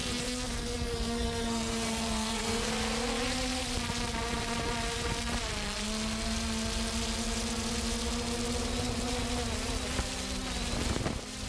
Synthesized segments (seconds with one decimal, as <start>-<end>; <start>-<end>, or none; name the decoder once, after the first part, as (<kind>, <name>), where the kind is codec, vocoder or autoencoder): 0.0-2.7 (codec, SNAC)